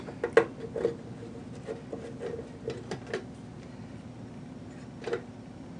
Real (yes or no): yes